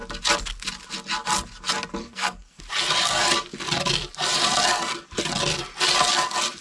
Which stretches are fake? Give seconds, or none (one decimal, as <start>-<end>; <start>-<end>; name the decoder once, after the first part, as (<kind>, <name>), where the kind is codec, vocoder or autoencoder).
2.0-2.6 (codec, SNAC)

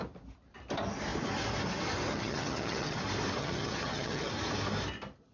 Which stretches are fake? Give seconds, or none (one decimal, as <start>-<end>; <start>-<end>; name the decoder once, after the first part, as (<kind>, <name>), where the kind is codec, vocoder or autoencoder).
2.1-3.0 (vocoder, HiFi-GAN); 3.4-4.3

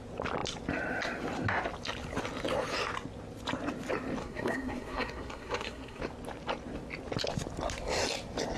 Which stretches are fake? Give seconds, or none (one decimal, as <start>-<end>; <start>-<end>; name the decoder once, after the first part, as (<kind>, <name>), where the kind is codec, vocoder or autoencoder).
4.2-6.0 (codec, SNAC)

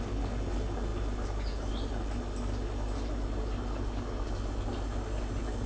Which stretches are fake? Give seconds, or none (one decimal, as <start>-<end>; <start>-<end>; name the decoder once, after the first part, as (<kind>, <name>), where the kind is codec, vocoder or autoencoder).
none